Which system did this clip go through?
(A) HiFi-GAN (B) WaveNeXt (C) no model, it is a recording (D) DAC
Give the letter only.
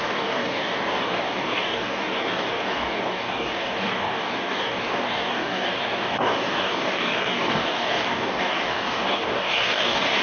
D